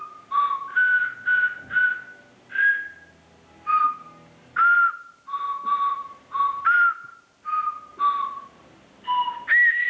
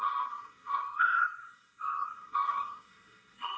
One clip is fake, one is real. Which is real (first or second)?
first